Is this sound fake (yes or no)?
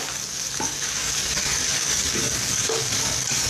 yes